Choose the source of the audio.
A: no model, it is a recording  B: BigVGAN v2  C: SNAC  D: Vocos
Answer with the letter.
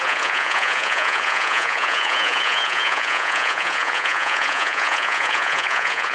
D